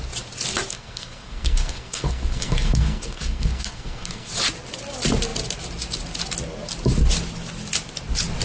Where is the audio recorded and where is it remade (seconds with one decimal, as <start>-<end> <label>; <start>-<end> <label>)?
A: 0.0-0.7 recorded; 0.7-4.3 remade; 4.3-8.4 recorded